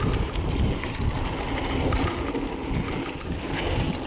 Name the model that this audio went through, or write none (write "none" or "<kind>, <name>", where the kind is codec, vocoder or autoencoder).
none